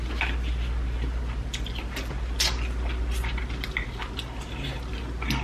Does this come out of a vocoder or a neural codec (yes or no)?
no